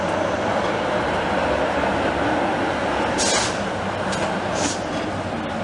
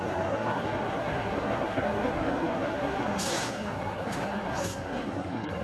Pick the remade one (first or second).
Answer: second